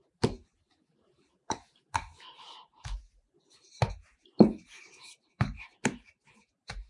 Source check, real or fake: real